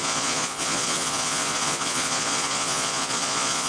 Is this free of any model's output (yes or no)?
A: no